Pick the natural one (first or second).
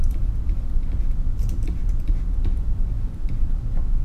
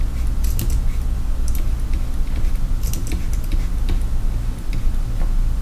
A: second